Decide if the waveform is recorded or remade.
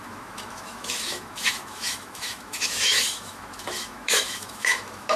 remade